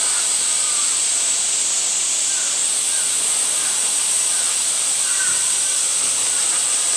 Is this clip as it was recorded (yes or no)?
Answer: yes